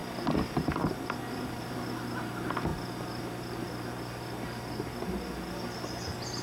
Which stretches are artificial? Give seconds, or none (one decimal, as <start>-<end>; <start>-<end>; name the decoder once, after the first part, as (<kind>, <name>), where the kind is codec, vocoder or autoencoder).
none

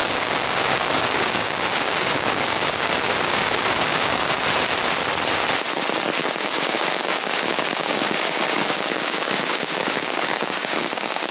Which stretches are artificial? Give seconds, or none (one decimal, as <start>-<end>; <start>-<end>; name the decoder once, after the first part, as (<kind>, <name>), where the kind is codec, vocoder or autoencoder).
0.0-4.4 (codec, DAC); 6.2-11.3

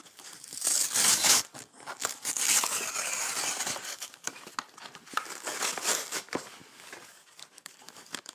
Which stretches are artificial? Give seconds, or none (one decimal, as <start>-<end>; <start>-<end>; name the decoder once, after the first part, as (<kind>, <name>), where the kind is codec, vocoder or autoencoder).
0.0-3.3 (codec, DAC); 3.8-4.5; 5.1-8.3